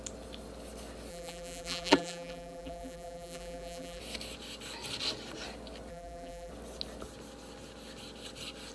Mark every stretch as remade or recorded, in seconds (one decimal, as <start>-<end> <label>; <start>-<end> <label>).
0.0-1.1 recorded; 1.1-4.0 remade; 4.0-5.9 recorded; 5.9-6.5 remade; 6.5-8.7 recorded